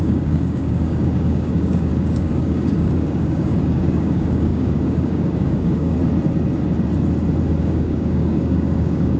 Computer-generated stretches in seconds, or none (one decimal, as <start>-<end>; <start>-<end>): 0.0-6.0; 7.6-9.2